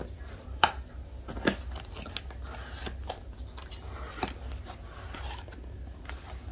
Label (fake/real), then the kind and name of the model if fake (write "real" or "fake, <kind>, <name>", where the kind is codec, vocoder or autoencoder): real